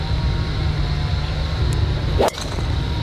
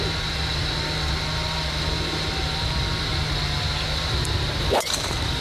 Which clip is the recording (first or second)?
first